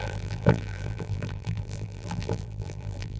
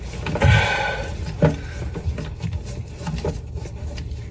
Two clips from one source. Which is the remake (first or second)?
first